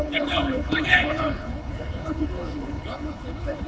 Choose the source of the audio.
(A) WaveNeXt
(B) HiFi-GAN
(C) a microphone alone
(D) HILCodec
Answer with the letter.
D